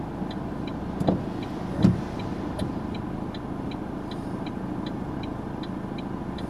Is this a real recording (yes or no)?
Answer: yes